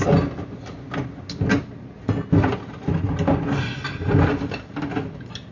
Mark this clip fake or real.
real